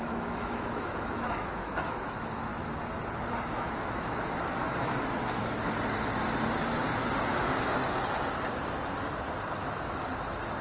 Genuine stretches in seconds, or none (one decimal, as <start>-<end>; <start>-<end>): 2.5-3.2; 5.4-10.6